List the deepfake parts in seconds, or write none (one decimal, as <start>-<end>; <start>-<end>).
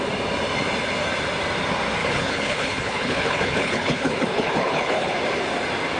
2.0-5.2